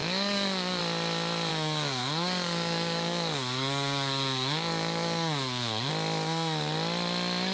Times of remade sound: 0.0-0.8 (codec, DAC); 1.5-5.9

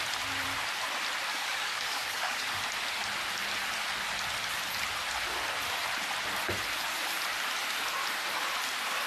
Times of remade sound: 1.3-2.6 (codec, DAC)